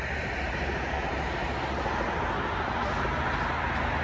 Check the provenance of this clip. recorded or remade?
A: recorded